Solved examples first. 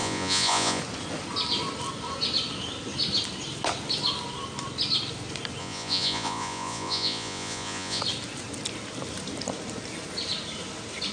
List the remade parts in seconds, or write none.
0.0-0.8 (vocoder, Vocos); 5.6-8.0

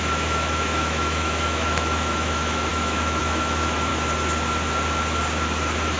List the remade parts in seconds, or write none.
0.0-3.9 (autoencoder, DAC-VAE)

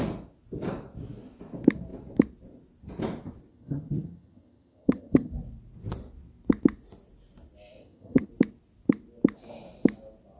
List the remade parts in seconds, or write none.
3.5-5.3 (vocoder, HiFi-GAN); 7.8-8.3

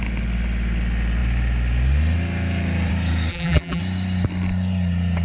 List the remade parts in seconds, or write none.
3.3-3.8 (vocoder, BigVGAN v2)

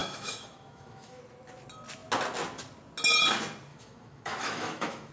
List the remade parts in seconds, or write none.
0.0-1.2 (autoencoder, DAC-VAE); 3.7-5.1